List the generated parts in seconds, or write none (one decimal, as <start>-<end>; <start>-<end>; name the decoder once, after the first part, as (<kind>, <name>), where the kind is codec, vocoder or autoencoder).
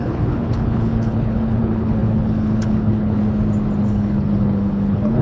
0.0-3.2 (codec, HILCodec); 3.8-5.2